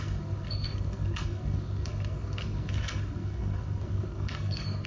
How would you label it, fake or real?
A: fake